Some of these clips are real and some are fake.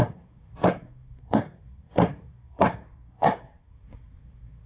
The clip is fake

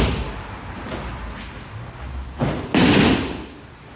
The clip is real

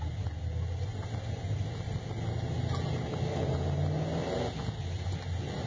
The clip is real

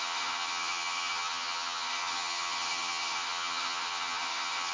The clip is fake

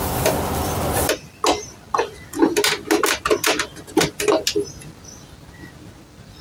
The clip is real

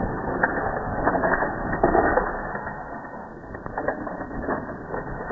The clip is fake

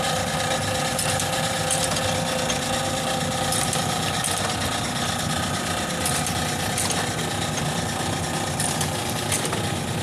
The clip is real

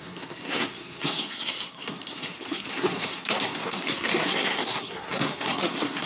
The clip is fake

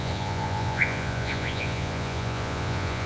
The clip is fake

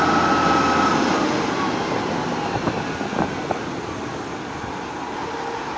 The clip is real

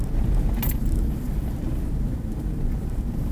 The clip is real